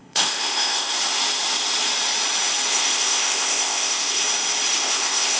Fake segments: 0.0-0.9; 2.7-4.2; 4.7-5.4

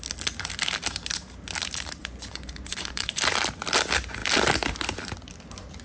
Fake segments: 2.0-3.2

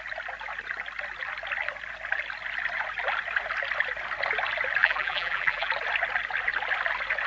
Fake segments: 4.8-5.7

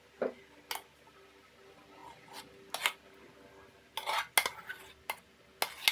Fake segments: none

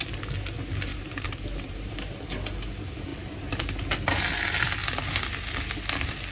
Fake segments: 0.9-1.9

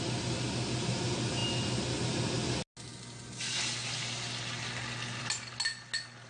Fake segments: none

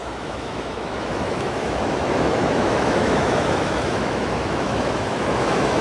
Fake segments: 0.0-5.8